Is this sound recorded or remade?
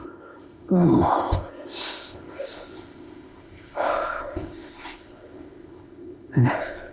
remade